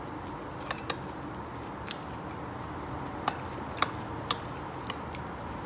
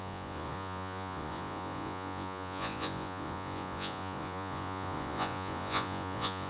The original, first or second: first